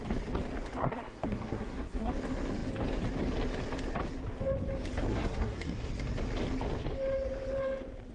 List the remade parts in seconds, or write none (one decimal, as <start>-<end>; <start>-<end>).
0.8-2.1; 5.1-5.9